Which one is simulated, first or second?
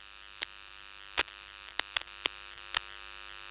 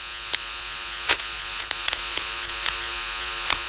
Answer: second